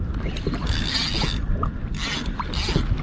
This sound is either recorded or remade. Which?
recorded